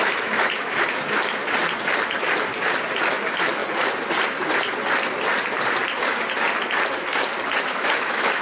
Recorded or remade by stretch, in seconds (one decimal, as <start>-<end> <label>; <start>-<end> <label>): 0.0-1.4 remade; 1.4-3.0 recorded; 3.0-3.6 remade; 3.6-7.6 recorded; 7.6-8.4 remade